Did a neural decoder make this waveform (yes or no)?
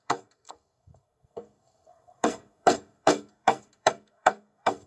yes